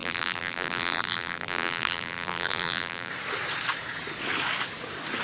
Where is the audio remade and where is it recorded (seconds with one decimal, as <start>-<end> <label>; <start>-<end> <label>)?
0.0-3.1 remade; 3.1-5.2 recorded